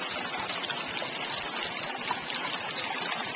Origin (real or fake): real